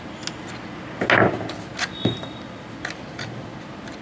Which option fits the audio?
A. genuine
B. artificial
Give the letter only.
A